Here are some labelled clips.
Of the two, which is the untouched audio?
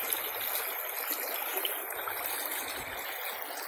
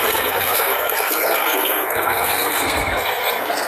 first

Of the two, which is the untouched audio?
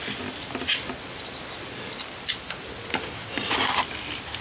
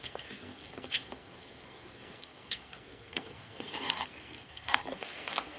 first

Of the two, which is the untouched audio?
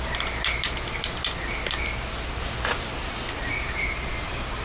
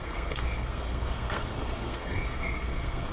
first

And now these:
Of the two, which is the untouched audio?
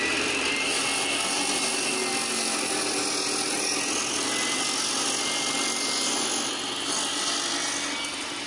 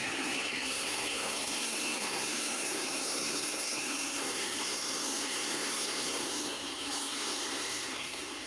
first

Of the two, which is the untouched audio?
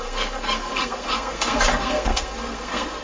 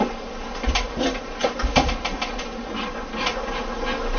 second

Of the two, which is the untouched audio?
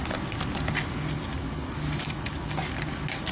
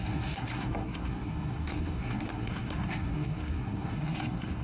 first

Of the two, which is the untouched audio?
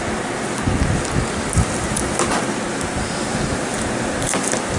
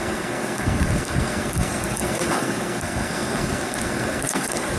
first